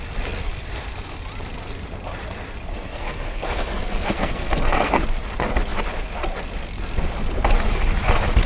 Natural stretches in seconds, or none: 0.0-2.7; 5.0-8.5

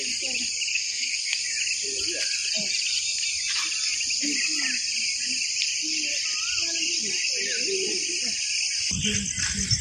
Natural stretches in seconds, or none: 0.0-0.7; 1.4-9.8